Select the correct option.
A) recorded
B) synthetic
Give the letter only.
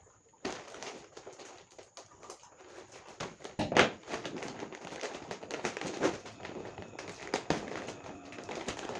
A